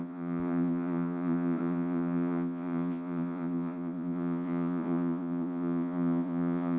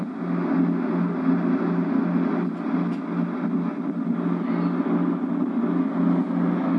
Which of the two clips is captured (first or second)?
second